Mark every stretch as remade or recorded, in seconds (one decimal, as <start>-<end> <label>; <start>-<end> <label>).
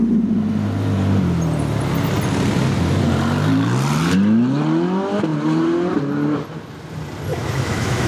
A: 0.0-7.3 recorded; 7.3-8.1 remade